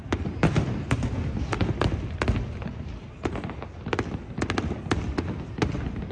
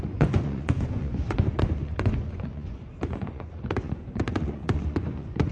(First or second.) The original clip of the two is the first